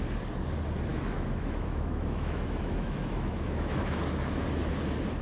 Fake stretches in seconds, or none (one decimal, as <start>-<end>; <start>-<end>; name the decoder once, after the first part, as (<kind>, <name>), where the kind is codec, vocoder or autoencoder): 0.9-4.0 (autoencoder, DAC-VAE)